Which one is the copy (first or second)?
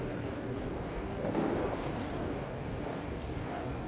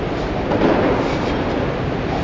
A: first